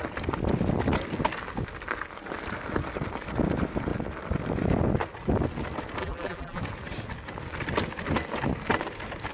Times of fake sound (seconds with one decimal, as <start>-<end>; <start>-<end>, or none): 6.0-6.6